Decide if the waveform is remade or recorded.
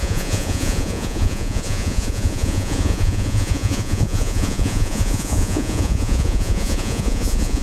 remade